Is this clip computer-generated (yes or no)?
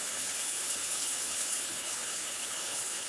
yes